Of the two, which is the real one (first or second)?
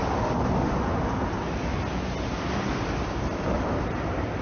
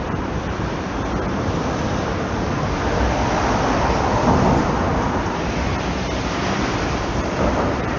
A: first